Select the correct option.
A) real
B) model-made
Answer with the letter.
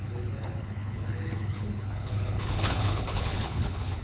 B